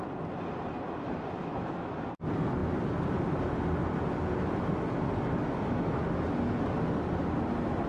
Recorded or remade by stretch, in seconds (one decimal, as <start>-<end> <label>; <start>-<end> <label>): 0.0-1.4 recorded; 1.4-1.9 remade; 1.9-7.9 recorded